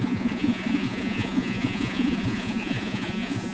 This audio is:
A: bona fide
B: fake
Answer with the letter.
B